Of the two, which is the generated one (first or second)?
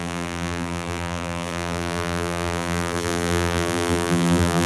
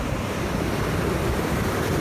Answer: first